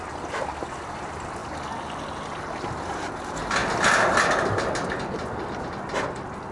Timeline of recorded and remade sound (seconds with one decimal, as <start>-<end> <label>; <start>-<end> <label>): 0.0-6.5 recorded